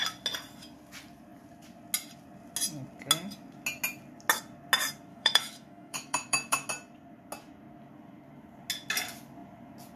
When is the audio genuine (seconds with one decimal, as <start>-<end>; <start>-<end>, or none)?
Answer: 0.0-5.1; 6.7-10.0

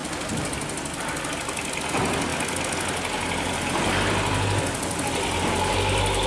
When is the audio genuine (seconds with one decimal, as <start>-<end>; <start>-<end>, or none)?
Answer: 0.0-6.3

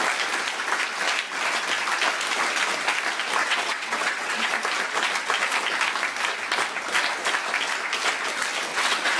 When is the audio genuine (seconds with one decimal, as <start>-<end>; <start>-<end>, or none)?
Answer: 0.0-3.4; 4.5-8.7